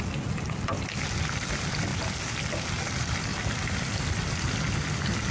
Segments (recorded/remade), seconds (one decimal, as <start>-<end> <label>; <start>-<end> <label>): 0.0-5.3 recorded